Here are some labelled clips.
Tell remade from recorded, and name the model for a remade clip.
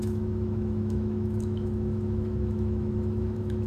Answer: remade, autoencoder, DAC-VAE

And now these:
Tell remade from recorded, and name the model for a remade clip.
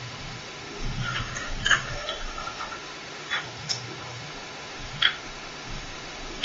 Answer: remade, autoencoder, DAC-VAE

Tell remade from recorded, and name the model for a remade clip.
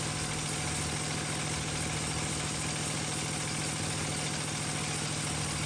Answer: recorded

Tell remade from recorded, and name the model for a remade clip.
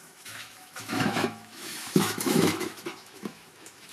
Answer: remade, autoencoder, DAC-VAE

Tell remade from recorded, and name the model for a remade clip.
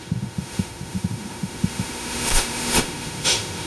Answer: remade, autoencoder, DAC-VAE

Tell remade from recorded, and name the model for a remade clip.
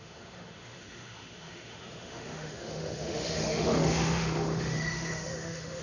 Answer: remade, autoencoder, DAC-VAE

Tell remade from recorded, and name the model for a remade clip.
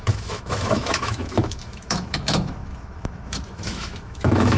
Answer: remade, autoencoder, DAC-VAE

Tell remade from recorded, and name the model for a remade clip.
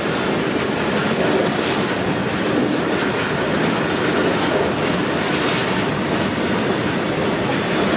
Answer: recorded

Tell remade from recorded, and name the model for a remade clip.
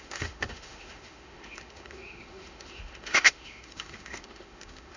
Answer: remade, autoencoder, DAC-VAE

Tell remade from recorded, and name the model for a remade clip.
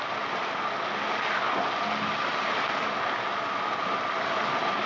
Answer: recorded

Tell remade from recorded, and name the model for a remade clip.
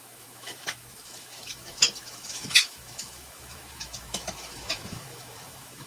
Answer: remade, autoencoder, DAC-VAE